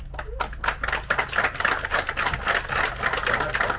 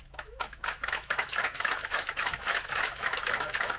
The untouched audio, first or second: first